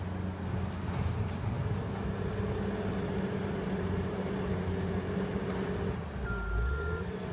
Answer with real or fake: real